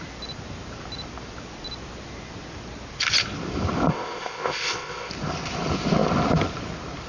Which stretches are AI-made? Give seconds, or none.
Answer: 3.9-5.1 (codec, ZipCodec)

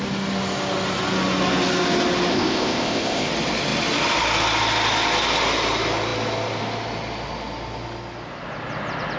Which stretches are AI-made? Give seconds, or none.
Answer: 2.3-3.3 (codec, ZipCodec)